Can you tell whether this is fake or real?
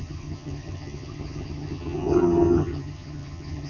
fake